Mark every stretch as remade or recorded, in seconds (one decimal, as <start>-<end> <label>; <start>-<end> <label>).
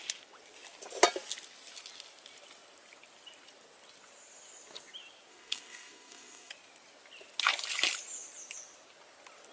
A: 0.0-5.3 recorded; 5.3-6.5 remade; 6.5-9.5 recorded